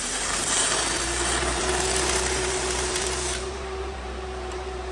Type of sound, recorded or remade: remade